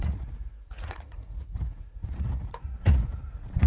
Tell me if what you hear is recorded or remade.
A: remade